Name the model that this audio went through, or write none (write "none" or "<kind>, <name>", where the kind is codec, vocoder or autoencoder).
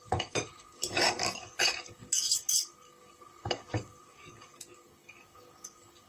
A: codec, DAC